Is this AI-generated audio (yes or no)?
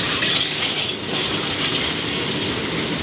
no